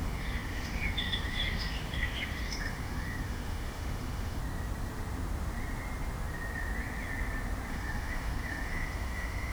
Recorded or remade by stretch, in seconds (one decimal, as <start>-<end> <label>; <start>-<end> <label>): 0.0-4.4 remade; 4.4-7.7 recorded; 7.7-9.5 remade